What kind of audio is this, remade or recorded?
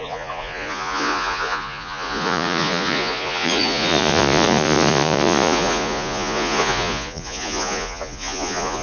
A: remade